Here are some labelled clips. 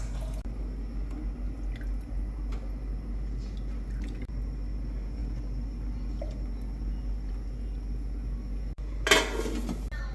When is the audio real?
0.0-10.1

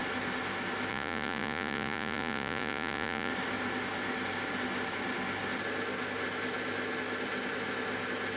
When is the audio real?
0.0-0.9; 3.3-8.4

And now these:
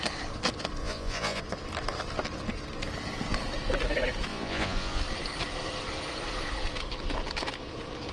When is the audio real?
0.0-0.8; 1.4-4.3; 5.0-8.1

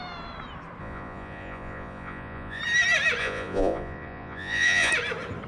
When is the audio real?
0.0-0.8; 2.6-3.2; 4.9-5.5

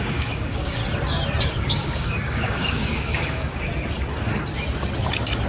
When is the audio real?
0.8-1.5; 3.7-5.5

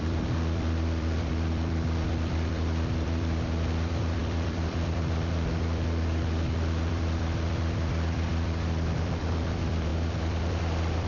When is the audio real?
none